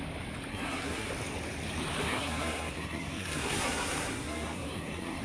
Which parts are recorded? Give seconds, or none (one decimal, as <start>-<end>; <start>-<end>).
0.0-0.5; 1.1-2.0